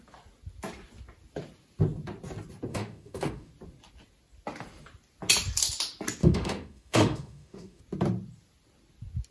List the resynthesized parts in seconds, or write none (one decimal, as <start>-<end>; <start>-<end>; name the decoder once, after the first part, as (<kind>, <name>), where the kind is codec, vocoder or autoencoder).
2.7-3.5 (autoencoder, DAC-VAE); 6.2-7.8